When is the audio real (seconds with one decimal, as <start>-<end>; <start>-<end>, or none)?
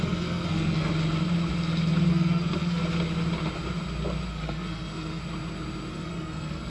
0.9-2.1; 2.8-4.3; 5.2-5.9